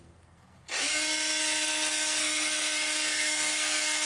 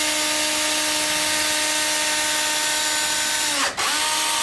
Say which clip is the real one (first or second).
second